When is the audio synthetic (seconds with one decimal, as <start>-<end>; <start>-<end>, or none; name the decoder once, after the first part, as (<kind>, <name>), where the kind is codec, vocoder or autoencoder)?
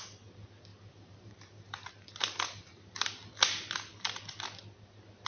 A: 0.7-2.9 (vocoder, BigVGAN v2)